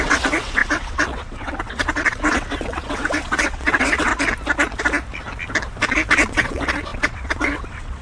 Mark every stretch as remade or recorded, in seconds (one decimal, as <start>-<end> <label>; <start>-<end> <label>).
0.0-4.1 remade; 4.1-6.1 recorded; 6.1-8.0 remade